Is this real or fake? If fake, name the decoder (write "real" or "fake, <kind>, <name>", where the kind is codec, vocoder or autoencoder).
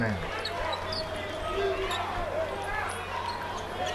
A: real